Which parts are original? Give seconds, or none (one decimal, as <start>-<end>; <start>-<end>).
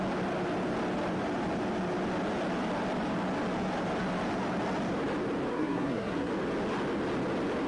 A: 0.0-5.5; 6.3-7.7